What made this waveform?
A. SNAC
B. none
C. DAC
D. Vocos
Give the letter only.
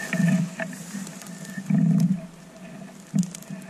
B